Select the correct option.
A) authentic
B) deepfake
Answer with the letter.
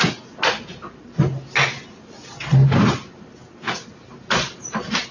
A